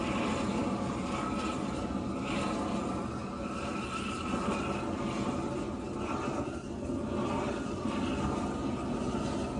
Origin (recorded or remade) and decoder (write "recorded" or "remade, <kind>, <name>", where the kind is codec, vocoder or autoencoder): recorded